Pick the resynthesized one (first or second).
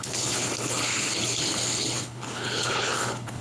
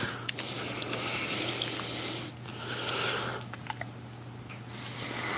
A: first